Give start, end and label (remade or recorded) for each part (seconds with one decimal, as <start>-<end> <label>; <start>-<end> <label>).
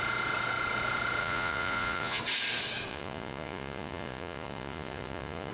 0.0-1.2 recorded; 1.2-2.2 remade; 2.2-2.9 recorded; 2.9-5.5 remade